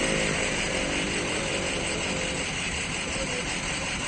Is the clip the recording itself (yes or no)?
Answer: no